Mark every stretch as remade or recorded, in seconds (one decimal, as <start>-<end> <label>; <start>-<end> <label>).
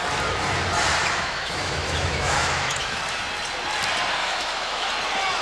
0.0-1.0 recorded; 1.0-3.0 remade; 3.0-4.2 recorded; 4.2-4.9 remade; 4.9-5.4 recorded